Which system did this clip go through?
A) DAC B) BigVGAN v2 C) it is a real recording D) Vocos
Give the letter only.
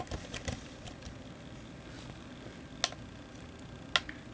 C